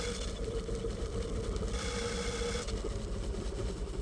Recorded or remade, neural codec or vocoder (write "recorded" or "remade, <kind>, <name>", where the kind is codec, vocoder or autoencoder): recorded